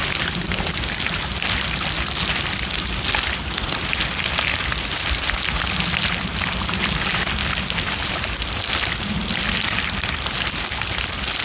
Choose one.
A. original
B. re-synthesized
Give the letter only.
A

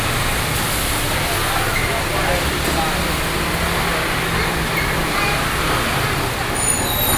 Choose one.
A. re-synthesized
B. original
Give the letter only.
B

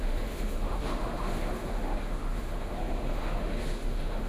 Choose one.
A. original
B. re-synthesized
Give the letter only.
B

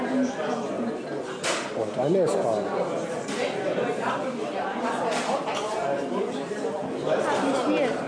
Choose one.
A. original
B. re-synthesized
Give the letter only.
A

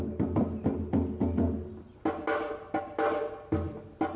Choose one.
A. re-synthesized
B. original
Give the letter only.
B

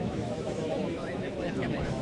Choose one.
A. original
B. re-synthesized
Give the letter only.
B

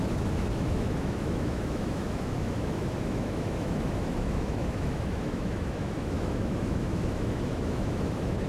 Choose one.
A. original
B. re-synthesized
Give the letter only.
B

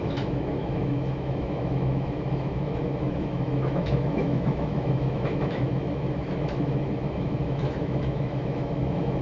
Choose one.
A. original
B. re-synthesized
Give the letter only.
B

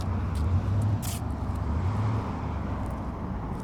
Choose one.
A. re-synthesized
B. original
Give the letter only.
B